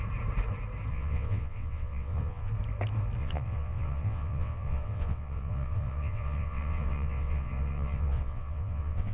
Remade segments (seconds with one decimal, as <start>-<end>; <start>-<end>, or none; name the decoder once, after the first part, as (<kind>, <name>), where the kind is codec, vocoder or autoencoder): 0.9-2.5 (vocoder, WaveNeXt); 3.2-9.1